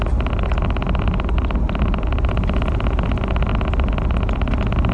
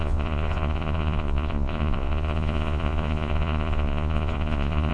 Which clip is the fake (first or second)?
second